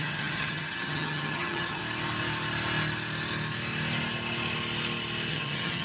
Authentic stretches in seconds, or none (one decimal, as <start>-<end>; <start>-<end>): 1.8-5.3